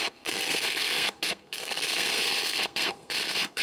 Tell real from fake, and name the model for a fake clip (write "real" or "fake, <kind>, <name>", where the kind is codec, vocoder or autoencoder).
fake, codec, SNAC